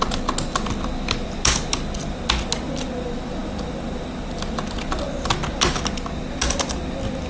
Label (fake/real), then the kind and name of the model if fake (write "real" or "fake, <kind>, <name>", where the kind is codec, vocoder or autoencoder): real